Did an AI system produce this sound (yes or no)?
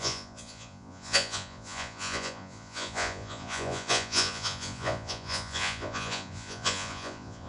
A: yes